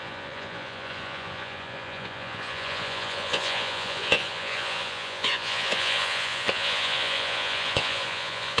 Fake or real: fake